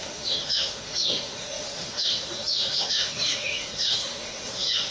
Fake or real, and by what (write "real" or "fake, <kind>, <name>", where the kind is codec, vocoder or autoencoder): fake, autoencoder, DAC-VAE